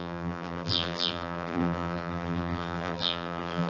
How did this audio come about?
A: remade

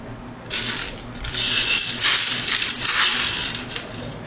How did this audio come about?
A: recorded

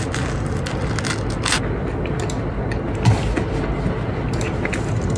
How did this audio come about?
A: recorded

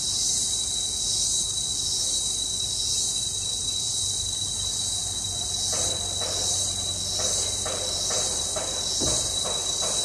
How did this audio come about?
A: recorded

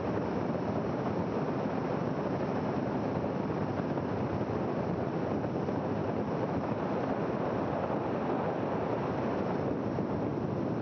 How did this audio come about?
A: recorded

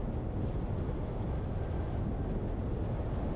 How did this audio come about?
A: recorded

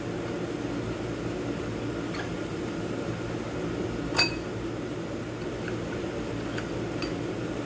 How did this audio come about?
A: recorded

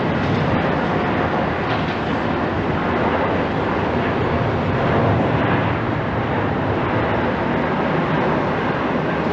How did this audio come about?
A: recorded